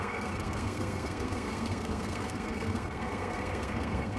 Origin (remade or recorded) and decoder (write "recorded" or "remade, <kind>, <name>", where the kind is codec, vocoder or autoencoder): remade, codec, SNAC